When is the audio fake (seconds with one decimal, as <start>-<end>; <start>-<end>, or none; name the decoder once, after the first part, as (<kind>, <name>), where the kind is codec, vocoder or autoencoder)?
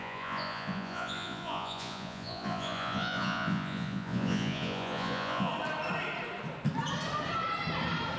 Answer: 0.0-5.5 (vocoder, Vocos)